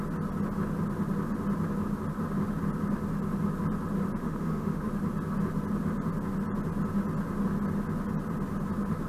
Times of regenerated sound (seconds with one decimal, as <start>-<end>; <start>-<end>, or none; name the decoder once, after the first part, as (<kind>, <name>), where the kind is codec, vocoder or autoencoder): 4.2-4.9 (autoencoder, DAC-VAE)